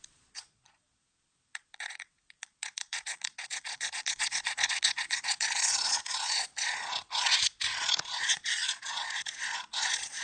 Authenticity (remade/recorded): remade